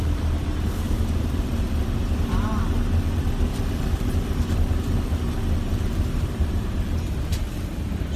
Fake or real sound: fake